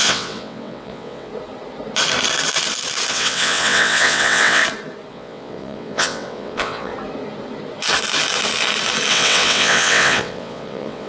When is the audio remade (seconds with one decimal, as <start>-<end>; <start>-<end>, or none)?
0.0-1.3; 3.1-4.6; 5.1-6.9; 9.1-11.1